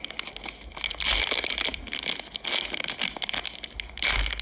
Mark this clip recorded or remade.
recorded